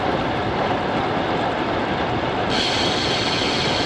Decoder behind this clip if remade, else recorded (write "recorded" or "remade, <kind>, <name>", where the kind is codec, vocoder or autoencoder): recorded